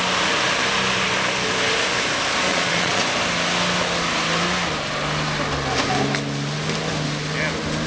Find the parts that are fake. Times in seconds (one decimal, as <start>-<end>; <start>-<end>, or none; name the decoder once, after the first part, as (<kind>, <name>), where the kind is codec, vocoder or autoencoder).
2.5-3.0 (vocoder, Vocos)

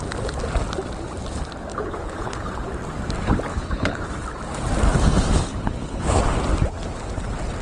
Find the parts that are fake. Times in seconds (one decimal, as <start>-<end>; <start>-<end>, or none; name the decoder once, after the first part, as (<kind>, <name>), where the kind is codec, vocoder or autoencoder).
1.7-2.5 (codec, HILCodec); 3.5-4.1; 5.5-6.2

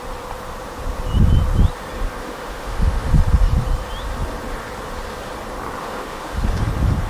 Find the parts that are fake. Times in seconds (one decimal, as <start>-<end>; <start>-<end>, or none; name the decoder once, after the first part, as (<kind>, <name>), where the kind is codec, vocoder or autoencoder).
2.2-3.1 (autoencoder, DAC-VAE); 5.8-6.4

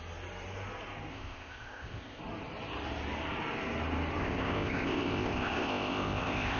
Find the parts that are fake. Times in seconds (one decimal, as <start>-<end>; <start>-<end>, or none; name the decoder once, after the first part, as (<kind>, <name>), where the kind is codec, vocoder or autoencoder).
1.1-2.2 (codec, ZipCodec); 4.2-6.6

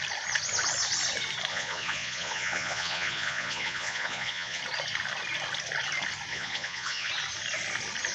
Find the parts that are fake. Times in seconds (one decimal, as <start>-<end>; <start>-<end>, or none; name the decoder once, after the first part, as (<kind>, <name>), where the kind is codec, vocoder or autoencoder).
1.5-4.6 (vocoder, Vocos); 6.3-7.1

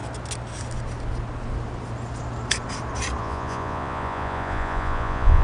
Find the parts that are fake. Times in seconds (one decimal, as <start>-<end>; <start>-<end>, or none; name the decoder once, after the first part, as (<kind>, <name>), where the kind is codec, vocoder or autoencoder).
3.2-5.4 (vocoder, Vocos)

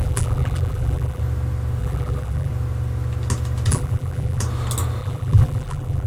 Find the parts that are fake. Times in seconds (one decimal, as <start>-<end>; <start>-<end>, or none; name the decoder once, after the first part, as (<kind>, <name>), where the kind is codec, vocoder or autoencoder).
0.0-1.2 (vocoder, BigVGAN v2); 1.8-2.5; 3.7-4.4; 5.0-6.1